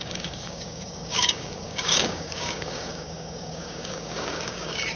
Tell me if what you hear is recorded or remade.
remade